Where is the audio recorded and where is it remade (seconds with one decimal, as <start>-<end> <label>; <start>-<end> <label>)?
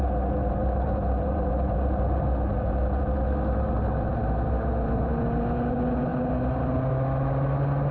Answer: 0.0-7.9 recorded